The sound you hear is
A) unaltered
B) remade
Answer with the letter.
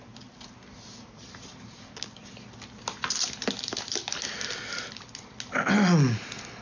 A